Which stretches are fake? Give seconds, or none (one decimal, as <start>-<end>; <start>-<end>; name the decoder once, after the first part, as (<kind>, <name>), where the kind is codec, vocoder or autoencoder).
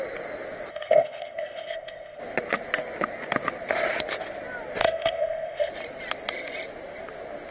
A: 0.7-2.2 (codec, SNAC); 4.8-5.7